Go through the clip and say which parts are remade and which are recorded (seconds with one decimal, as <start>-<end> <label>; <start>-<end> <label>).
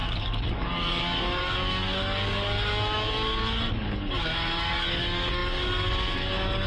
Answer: 0.0-6.7 remade